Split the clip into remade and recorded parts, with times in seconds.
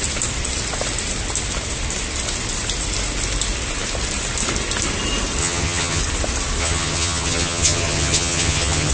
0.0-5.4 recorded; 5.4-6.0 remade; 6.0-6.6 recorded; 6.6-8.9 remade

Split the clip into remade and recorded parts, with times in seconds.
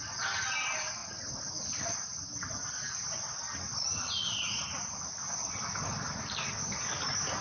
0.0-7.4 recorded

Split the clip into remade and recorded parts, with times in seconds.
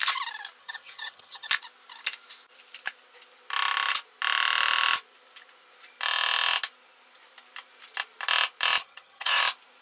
0.0-0.6 recorded; 0.6-1.5 remade; 1.5-8.8 recorded; 8.8-9.4 remade; 9.4-9.8 recorded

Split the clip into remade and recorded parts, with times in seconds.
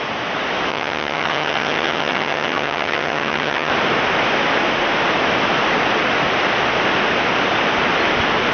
0.0-0.7 recorded; 0.7-3.7 remade; 3.7-8.5 recorded